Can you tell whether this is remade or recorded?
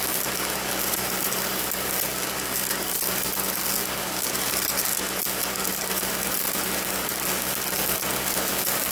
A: remade